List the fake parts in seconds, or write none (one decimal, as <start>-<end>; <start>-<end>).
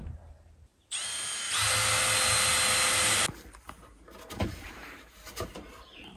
0.0-0.7; 4.4-6.2